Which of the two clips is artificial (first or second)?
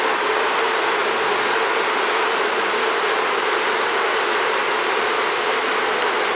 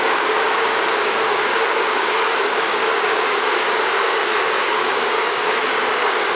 second